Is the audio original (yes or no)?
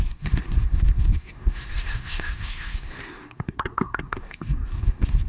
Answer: no